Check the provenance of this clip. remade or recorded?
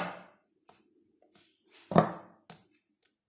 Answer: recorded